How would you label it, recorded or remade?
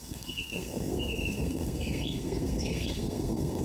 remade